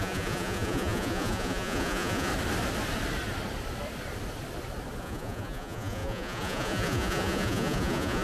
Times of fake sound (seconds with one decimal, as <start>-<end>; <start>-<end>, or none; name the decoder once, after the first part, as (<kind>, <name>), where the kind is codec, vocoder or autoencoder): 0.0-2.3 (vocoder, Vocos); 5.0-8.2